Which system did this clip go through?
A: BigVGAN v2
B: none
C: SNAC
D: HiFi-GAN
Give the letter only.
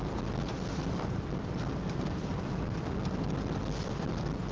B